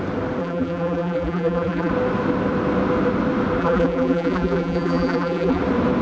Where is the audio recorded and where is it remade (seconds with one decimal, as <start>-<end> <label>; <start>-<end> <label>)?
0.0-0.4 recorded; 0.4-1.9 remade; 1.9-3.6 recorded; 3.6-5.6 remade; 5.6-6.0 recorded